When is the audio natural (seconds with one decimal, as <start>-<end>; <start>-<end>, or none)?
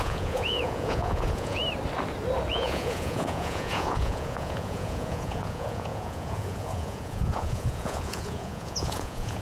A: 1.6-2.5